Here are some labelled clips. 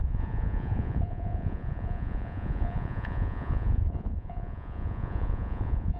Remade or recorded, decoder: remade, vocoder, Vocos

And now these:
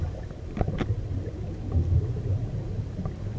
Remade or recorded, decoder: recorded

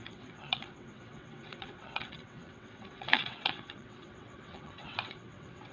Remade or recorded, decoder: remade, vocoder, WaveNeXt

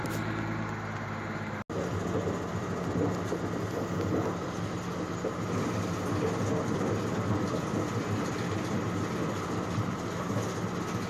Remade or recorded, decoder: recorded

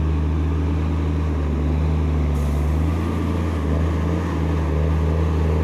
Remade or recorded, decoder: recorded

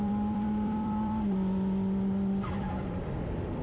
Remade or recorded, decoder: remade, vocoder, BigVGAN v2